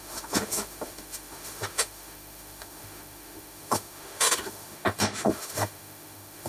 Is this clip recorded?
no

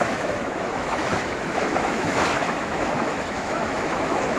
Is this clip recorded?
no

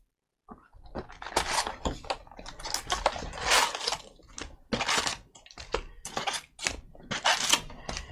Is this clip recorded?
yes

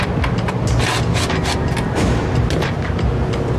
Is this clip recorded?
yes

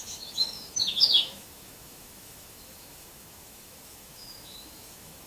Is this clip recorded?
no